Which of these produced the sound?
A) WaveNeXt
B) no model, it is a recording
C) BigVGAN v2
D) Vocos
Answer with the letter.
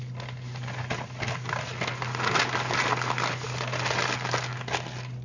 B